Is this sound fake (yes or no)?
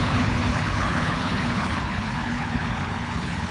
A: yes